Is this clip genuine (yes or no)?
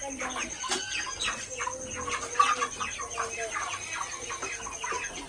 yes